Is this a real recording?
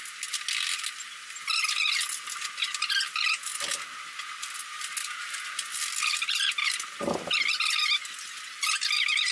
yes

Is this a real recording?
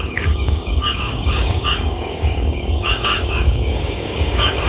no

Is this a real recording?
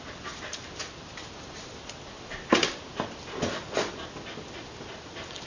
yes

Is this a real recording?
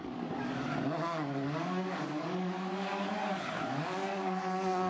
no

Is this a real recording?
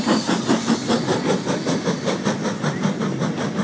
yes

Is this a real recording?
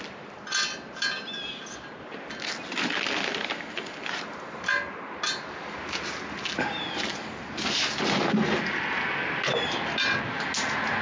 yes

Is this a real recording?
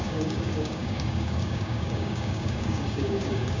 no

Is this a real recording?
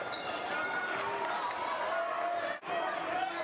yes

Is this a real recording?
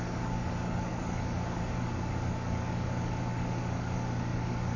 no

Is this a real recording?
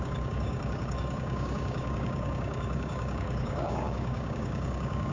no